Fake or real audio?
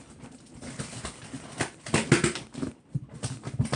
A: real